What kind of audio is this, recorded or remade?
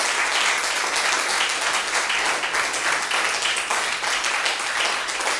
recorded